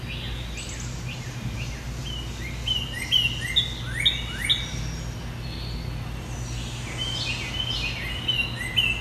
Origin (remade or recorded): recorded